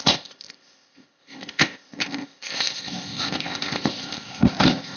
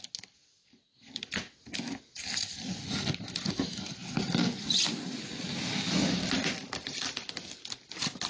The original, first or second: second